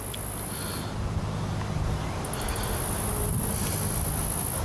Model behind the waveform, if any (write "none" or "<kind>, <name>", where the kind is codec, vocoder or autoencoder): none